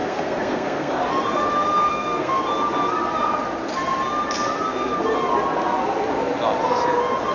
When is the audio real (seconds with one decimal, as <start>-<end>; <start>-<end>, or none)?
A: 0.9-1.9; 2.4-7.3